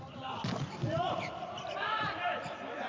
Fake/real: real